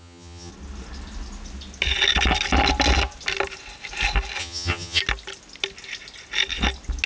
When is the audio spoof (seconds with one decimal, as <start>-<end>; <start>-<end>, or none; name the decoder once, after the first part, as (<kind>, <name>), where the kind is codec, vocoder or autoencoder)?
0.0-0.5 (vocoder, HiFi-GAN); 4.4-5.0